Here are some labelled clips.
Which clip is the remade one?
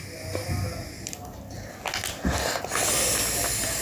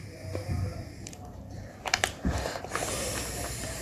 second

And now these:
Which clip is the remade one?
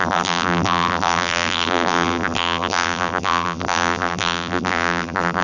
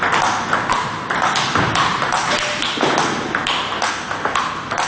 first